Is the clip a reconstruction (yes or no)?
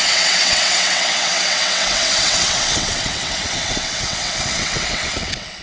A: yes